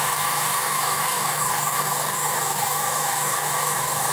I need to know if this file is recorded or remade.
remade